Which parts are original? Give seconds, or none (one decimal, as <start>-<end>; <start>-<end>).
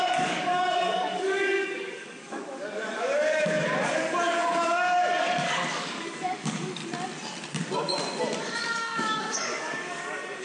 6.8-8.4